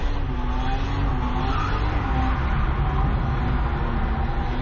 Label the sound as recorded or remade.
recorded